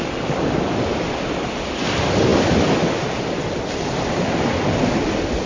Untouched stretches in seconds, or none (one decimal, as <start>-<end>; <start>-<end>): 0.0-5.5